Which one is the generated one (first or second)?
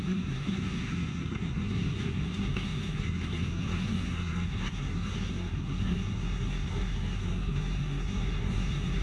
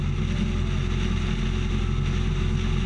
first